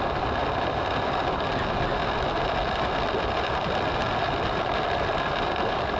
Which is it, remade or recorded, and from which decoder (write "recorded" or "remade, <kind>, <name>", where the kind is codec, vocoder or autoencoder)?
recorded